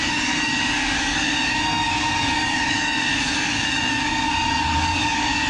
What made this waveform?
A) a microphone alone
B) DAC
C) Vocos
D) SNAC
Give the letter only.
B